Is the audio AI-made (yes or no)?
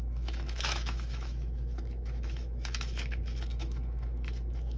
yes